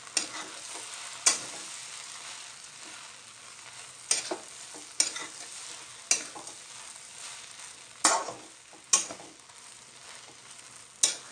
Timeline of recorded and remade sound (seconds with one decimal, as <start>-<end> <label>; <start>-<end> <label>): 0.0-11.3 recorded